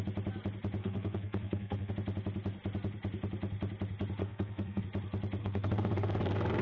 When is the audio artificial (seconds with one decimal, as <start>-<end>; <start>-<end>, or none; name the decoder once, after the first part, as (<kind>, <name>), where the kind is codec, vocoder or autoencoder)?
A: 0.8-1.9 (codec, SNAC); 4.2-4.8; 5.4-6.6